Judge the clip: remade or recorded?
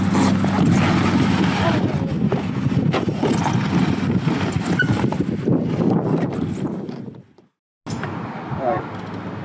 recorded